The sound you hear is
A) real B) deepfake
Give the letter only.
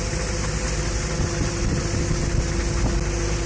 A